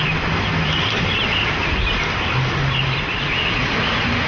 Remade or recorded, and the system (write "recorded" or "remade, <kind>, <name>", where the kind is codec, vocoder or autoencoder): recorded